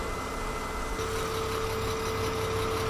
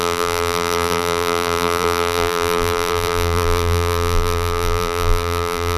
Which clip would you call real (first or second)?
first